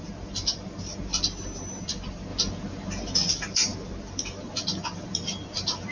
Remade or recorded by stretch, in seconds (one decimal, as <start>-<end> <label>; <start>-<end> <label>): 0.0-2.3 remade; 2.3-3.3 recorded; 3.3-5.9 remade